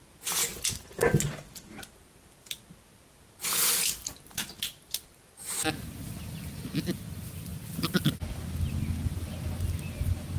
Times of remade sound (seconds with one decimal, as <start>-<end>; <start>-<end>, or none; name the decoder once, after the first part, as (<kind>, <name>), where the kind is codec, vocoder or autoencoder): none